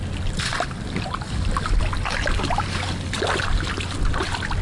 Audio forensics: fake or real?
real